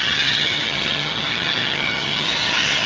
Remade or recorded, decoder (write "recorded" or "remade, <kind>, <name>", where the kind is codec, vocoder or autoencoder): remade, vocoder, HiFi-GAN